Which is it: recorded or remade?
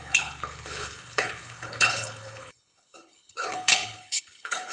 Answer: remade